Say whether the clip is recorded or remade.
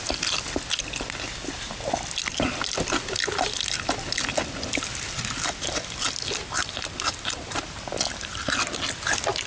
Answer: recorded